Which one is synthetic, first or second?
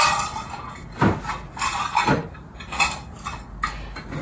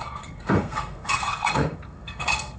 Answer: second